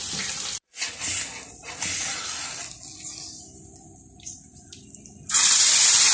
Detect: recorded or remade recorded